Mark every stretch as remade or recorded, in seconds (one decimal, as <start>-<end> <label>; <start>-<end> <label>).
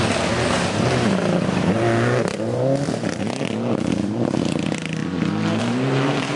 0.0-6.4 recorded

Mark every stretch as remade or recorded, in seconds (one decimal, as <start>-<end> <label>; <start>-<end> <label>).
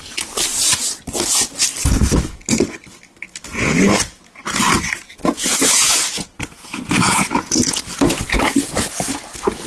0.0-5.2 recorded; 5.2-7.8 remade; 7.8-9.7 recorded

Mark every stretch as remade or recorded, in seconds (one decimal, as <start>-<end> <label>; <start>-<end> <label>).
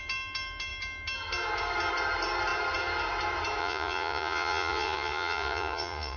0.0-3.6 recorded; 3.6-6.2 remade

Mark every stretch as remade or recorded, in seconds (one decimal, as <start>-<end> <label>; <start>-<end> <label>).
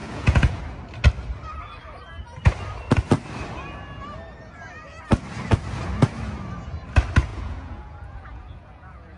0.0-0.6 remade; 0.6-7.3 recorded; 7.3-9.2 remade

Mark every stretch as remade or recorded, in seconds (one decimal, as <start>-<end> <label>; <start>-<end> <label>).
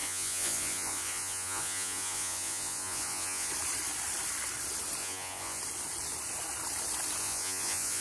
0.0-3.5 remade; 3.5-5.0 recorded; 5.0-5.6 remade; 5.6-7.2 recorded; 7.2-8.0 remade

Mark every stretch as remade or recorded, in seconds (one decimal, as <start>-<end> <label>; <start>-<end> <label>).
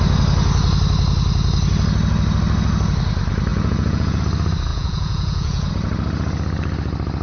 0.0-3.5 recorded; 3.5-4.2 remade; 4.2-4.7 recorded; 4.7-5.7 remade; 5.7-7.2 recorded